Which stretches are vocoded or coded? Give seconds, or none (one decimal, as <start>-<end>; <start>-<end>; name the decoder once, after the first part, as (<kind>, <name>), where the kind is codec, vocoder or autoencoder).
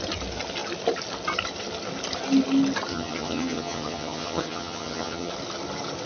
2.9-5.3 (vocoder, HiFi-GAN)